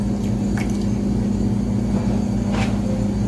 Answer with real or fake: real